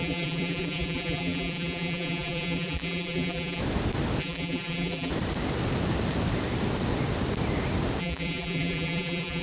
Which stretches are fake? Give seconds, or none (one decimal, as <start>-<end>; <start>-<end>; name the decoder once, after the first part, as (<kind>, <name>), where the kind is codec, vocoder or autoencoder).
0.0-3.6 (vocoder, BigVGAN v2); 4.2-5.1; 8.0-9.4